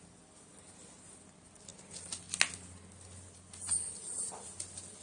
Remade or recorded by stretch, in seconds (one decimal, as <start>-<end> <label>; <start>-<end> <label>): 0.0-5.0 recorded